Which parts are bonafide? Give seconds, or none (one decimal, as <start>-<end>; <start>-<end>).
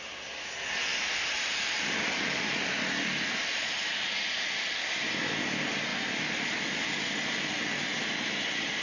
0.0-0.9; 5.1-8.8